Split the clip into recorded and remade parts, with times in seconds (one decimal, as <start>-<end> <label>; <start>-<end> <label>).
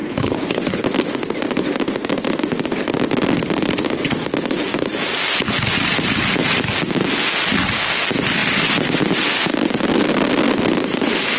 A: 0.0-0.8 remade; 0.8-11.4 recorded